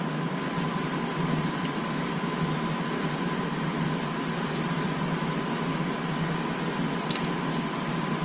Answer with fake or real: real